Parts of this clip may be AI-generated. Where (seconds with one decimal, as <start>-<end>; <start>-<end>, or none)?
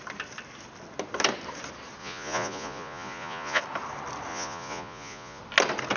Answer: 2.0-3.6; 4.3-5.4